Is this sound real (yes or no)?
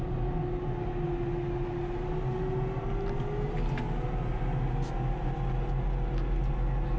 yes